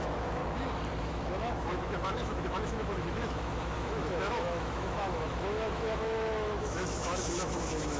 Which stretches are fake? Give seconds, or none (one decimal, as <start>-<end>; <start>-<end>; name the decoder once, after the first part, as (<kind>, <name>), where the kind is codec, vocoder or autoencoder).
0.0-0.4 (autoencoder, DAC-VAE); 1.0-8.0